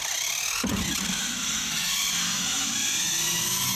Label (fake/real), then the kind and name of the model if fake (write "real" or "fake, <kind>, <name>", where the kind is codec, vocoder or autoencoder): real